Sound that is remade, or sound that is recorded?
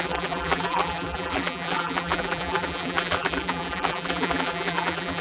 remade